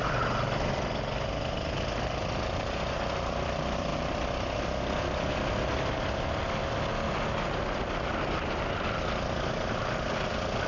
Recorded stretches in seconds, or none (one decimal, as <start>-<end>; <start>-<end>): 0.0-10.7